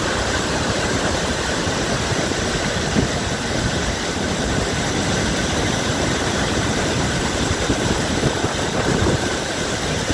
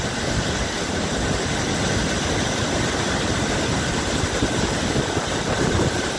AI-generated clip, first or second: first